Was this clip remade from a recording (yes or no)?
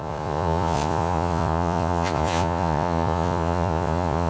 yes